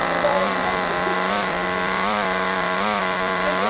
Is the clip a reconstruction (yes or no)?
yes